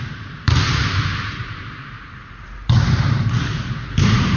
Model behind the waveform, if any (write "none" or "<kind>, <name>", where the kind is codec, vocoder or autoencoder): vocoder, BigVGAN v2